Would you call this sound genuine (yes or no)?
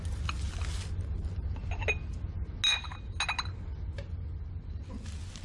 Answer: yes